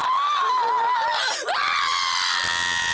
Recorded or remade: recorded